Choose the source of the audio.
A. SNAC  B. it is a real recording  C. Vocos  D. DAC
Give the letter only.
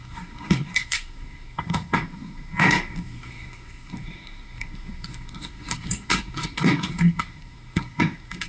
A